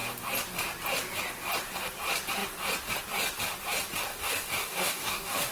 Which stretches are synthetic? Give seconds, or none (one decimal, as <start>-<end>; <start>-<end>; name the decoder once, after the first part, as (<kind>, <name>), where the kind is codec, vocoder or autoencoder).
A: 4.1-5.5 (codec, DAC)